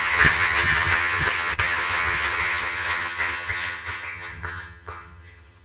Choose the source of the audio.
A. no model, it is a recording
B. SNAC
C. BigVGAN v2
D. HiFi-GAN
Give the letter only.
D